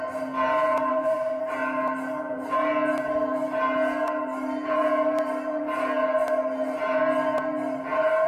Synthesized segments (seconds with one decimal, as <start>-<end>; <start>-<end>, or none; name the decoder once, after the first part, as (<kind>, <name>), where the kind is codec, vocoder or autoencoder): 0.9-1.4 (autoencoder, DAC-VAE)